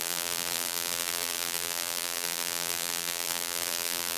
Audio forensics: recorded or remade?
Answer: remade